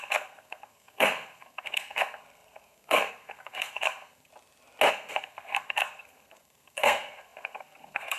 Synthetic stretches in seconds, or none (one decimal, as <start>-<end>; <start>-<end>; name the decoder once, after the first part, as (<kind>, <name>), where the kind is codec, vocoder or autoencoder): 0.0-4.3 (codec, SNAC); 4.9-8.2